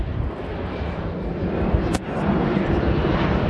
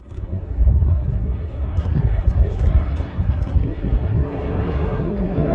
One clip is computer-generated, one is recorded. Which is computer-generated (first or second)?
second